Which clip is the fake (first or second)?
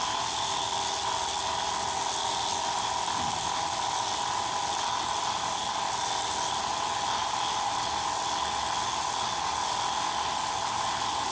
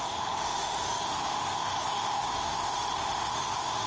second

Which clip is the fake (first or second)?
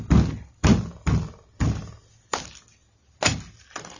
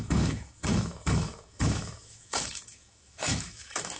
second